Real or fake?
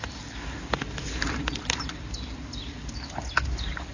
real